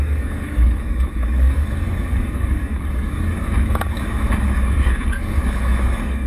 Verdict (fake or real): fake